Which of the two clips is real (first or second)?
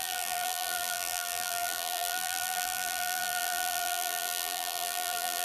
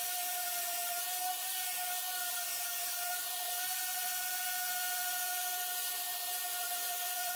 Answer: second